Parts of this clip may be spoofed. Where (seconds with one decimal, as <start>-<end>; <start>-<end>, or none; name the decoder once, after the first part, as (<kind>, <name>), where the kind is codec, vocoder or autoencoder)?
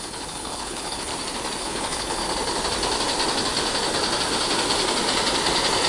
0.0-1.1 (codec, HILCodec); 1.6-2.2